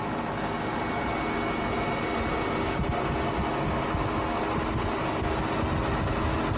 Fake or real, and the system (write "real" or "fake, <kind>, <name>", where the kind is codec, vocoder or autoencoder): real